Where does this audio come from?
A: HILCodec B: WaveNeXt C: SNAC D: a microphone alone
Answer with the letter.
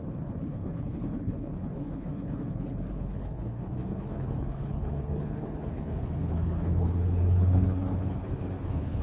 A